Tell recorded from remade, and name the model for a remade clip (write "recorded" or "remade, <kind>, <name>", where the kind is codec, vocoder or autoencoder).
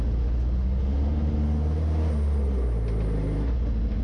recorded